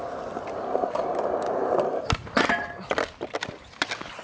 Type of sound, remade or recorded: recorded